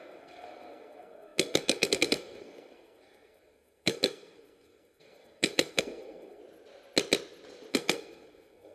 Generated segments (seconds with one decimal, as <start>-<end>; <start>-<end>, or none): 0.0-6.4; 7.7-8.7